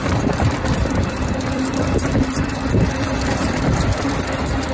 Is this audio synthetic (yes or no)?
yes